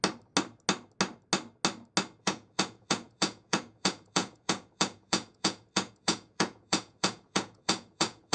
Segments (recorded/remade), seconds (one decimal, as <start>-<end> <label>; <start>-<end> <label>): 0.0-2.2 recorded; 2.2-8.3 remade